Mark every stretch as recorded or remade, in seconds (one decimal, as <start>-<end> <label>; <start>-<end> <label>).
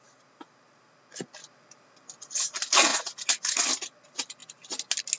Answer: 0.0-2.9 recorded; 2.9-3.7 remade; 3.7-5.2 recorded